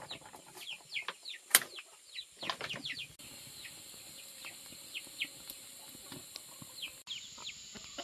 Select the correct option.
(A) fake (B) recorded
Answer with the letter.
B